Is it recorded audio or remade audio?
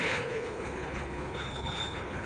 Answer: remade